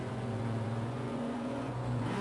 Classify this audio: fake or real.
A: fake